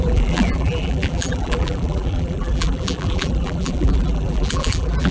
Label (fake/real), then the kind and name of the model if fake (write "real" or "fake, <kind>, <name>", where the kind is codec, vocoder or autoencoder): fake, vocoder, BigVGAN v2